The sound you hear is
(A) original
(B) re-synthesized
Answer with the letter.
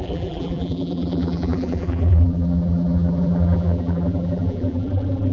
B